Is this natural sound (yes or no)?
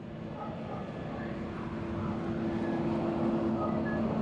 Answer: yes